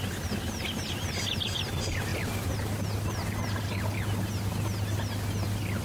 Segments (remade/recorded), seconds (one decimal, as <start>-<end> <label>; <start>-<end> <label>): 0.0-5.8 recorded